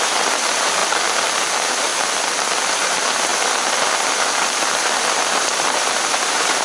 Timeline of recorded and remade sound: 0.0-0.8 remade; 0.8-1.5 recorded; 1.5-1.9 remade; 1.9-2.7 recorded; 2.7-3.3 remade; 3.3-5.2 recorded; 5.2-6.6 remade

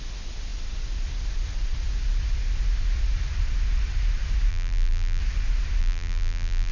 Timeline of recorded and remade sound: 0.0-4.5 recorded; 4.5-5.2 remade; 5.2-5.8 recorded; 5.8-6.7 remade

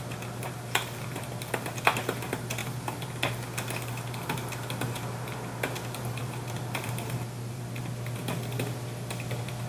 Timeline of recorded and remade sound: 0.0-2.6 recorded; 2.6-3.2 remade; 3.2-6.2 recorded; 6.2-7.8 remade; 7.8-9.7 recorded

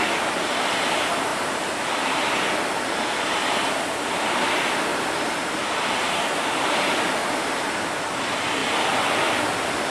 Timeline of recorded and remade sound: 0.0-4.9 recorded; 4.9-6.2 remade; 6.2-7.2 recorded; 7.2-8.2 remade; 8.2-9.9 recorded

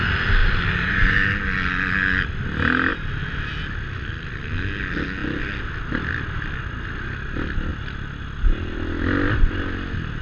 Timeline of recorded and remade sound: 0.0-0.4 recorded; 0.4-1.3 remade; 1.3-10.2 recorded

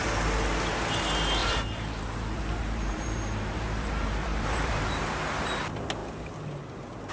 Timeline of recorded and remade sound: 0.0-1.4 recorded; 1.4-5.3 remade; 5.3-7.1 recorded

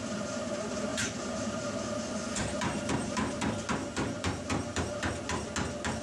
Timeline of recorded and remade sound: 0.0-0.9 recorded; 0.9-1.7 remade; 1.7-2.4 recorded; 2.4-3.3 remade; 3.3-3.8 recorded; 3.8-5.1 remade; 5.1-6.0 recorded